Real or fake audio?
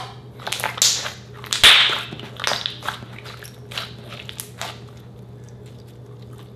real